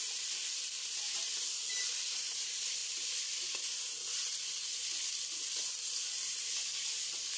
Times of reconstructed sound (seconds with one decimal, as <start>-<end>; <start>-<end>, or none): none

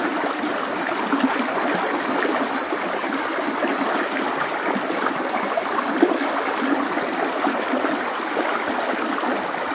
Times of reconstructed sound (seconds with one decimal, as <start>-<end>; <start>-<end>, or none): none

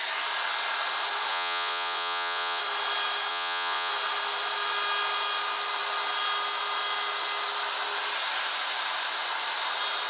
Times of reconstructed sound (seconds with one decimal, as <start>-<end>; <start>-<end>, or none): 1.3-2.6; 3.3-3.9